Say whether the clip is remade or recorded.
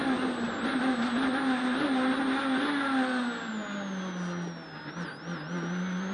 recorded